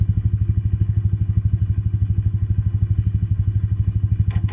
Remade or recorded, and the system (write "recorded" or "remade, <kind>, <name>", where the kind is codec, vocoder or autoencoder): remade, codec, HILCodec